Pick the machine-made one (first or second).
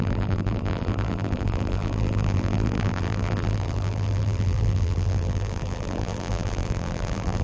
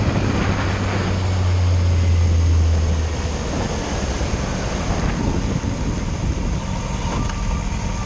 first